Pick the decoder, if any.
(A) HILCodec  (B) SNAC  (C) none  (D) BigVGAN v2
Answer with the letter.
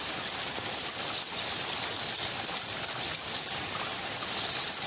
C